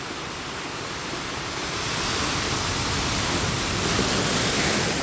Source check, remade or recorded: recorded